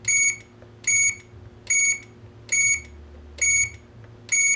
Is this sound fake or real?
real